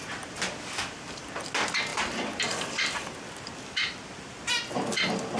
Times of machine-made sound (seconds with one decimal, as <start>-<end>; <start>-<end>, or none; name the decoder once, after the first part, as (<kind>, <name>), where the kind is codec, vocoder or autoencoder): 1.9-4.4 (vocoder, BigVGAN v2)